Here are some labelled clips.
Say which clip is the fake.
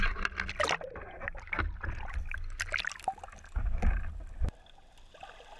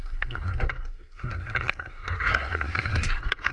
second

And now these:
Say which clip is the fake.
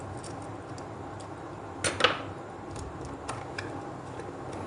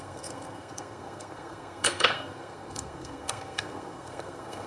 second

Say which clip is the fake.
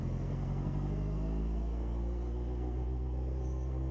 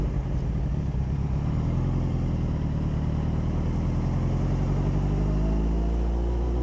first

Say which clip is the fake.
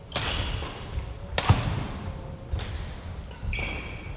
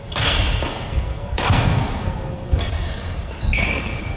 second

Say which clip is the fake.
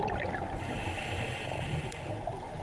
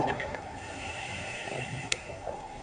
second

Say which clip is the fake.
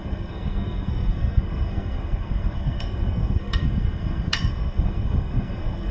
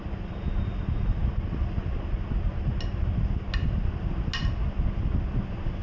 first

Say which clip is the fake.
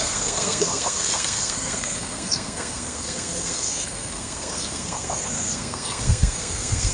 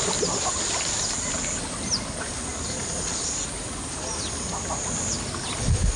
first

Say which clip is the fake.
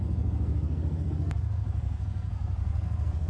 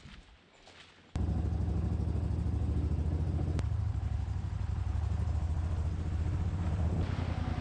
first